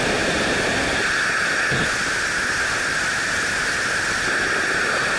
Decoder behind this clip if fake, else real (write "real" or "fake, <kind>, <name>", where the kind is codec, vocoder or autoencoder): real